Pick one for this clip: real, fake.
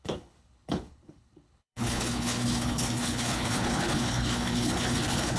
fake